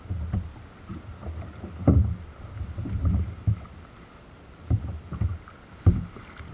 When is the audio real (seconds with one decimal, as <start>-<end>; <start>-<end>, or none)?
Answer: 0.0-6.5